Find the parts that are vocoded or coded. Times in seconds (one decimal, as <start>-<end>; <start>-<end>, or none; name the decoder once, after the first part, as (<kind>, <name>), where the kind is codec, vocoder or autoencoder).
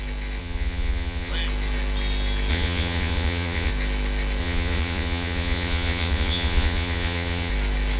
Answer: 0.4-1.3 (vocoder, Vocos); 2.5-3.7; 4.4-7.5